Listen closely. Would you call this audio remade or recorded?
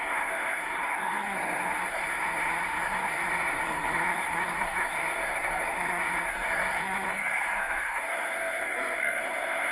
remade